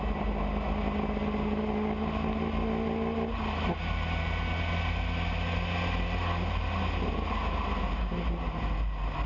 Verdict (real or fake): real